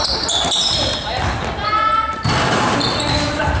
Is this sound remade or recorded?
recorded